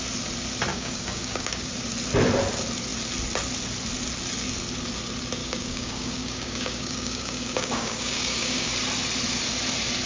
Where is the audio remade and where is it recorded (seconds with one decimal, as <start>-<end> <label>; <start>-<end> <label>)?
0.0-0.7 recorded; 0.7-1.7 remade; 1.7-5.4 recorded; 5.4-8.7 remade; 8.7-10.1 recorded